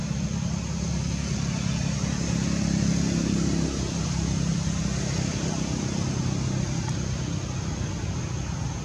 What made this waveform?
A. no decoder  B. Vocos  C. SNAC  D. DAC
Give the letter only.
A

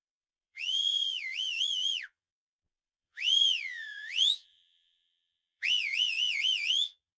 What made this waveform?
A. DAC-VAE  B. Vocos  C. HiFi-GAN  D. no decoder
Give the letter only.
B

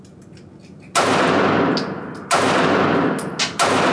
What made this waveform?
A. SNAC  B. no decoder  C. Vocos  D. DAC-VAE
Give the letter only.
B